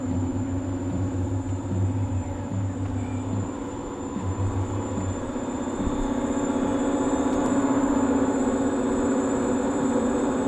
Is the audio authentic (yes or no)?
no